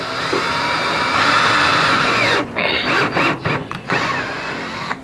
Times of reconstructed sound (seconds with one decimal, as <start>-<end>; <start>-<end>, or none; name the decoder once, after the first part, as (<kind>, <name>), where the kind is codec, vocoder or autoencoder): 1.7-2.8 (vocoder, Vocos); 3.6-4.5